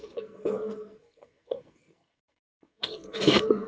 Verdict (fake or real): fake